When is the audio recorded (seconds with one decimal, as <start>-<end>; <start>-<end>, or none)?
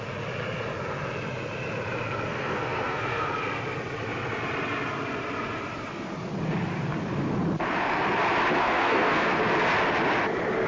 0.0-2.3; 3.3-8.6; 9.4-10.7